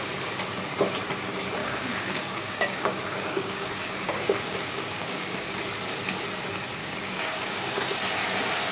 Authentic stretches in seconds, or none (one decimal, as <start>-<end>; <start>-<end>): 0.0-1.6; 5.6-6.8; 7.8-8.7